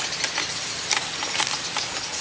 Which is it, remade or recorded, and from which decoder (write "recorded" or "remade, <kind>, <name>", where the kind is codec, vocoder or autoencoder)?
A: recorded